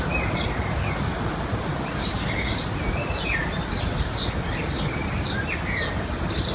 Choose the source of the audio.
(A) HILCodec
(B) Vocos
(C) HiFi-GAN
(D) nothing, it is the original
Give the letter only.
D